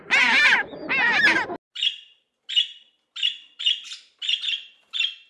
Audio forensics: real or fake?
real